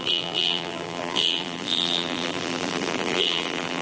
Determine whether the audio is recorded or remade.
remade